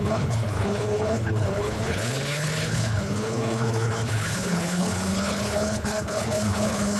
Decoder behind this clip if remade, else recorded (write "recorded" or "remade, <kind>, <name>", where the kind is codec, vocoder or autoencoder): remade, codec, HILCodec